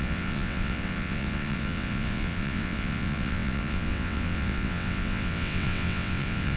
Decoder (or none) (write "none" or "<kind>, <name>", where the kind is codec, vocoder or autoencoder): vocoder, WaveNeXt